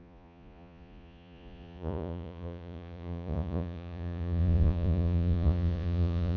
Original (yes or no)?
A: no